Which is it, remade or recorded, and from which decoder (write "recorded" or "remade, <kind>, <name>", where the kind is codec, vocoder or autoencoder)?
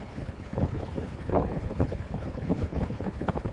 remade, codec, HILCodec